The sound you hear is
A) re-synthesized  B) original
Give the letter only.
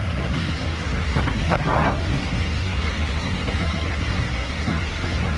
A